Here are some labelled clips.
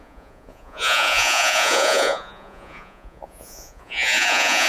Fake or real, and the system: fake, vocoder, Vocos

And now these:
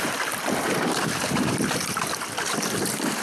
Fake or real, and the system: real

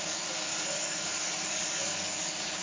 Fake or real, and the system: fake, codec, DAC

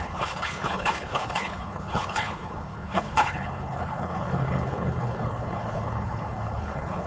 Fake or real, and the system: fake, codec, HILCodec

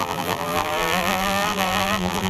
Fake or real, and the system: fake, vocoder, BigVGAN v2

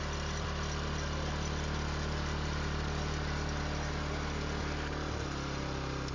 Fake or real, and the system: real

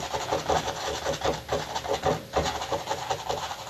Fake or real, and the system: real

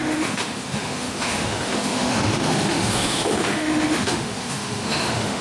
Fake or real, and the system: fake, autoencoder, DAC-VAE